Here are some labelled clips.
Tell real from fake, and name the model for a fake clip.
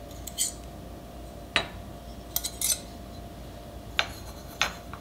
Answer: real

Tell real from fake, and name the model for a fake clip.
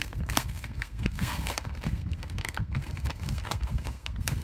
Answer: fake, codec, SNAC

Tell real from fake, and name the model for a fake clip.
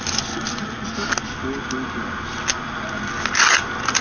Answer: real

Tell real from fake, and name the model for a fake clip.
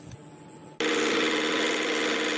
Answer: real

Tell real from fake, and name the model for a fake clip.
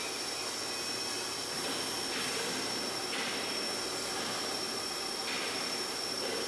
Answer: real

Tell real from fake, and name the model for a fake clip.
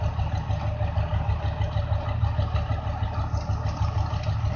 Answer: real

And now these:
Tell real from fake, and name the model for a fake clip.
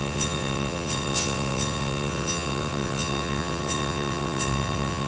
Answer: fake, vocoder, WaveNeXt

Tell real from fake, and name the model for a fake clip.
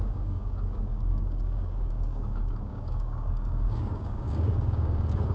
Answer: fake, codec, DAC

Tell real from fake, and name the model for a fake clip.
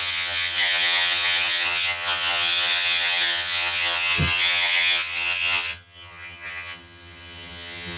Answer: fake, vocoder, HiFi-GAN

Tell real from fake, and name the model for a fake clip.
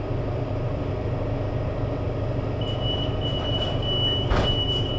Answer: fake, vocoder, BigVGAN v2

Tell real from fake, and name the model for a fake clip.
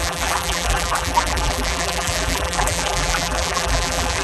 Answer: fake, vocoder, BigVGAN v2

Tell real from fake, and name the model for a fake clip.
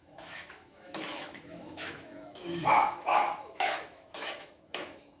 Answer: fake, autoencoder, DAC-VAE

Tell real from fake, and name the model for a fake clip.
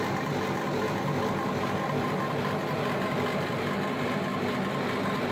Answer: real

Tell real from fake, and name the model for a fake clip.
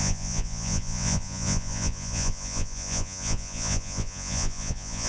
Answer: fake, vocoder, Vocos